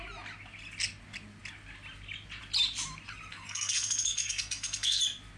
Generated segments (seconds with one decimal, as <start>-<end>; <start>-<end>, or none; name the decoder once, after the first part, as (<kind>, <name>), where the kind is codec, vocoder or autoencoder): 3.3-5.0 (codec, SNAC)